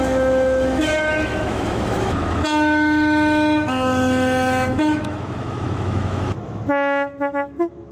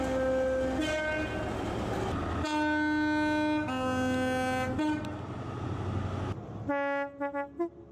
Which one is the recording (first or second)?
second